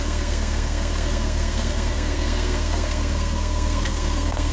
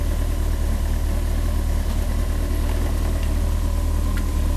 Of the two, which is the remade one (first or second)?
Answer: first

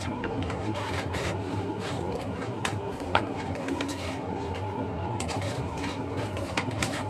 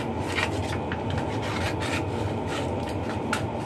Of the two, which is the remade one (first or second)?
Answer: first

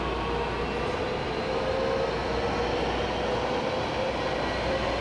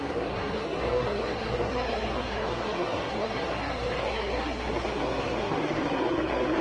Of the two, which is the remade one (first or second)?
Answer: second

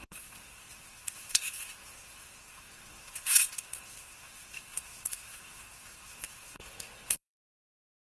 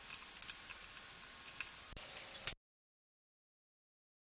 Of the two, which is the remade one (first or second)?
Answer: first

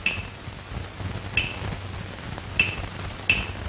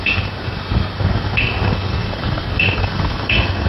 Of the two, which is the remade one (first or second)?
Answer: second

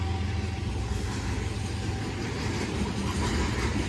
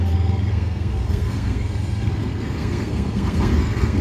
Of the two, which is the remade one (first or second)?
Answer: second